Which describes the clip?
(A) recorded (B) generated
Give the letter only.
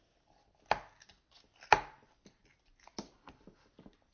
A